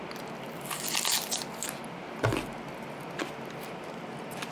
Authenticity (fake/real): real